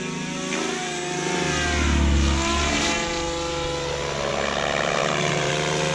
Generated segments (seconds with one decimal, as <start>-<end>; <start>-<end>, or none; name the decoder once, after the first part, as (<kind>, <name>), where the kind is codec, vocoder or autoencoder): 5.0-5.5 (vocoder, BigVGAN v2)